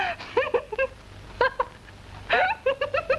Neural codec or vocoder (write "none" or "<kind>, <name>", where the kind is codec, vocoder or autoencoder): none